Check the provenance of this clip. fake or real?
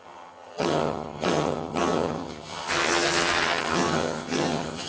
fake